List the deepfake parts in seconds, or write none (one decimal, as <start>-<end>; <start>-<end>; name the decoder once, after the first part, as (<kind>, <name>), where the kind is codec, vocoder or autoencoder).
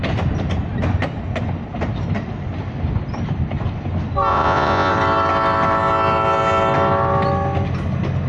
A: 4.3-4.9 (vocoder, Vocos)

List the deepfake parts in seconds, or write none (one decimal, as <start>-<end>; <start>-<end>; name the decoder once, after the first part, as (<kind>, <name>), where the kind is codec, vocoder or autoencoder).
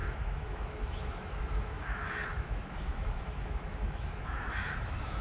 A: 0.0-5.2 (autoencoder, DAC-VAE)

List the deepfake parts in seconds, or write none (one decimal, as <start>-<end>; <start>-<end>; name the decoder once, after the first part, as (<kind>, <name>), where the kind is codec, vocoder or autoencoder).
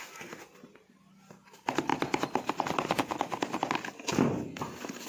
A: none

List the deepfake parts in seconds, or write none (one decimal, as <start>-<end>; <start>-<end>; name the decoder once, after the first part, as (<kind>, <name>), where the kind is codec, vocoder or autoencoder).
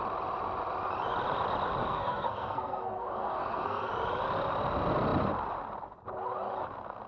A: 1.8-3.9 (codec, SNAC)